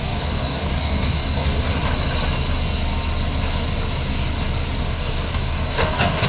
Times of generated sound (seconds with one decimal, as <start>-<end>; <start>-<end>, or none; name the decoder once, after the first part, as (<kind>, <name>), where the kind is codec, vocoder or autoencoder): 0.0-1.7 (codec, DAC); 4.8-6.3